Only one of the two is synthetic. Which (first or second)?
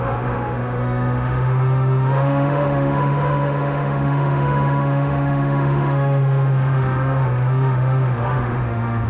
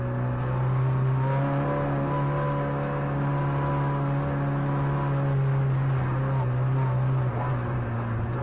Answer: first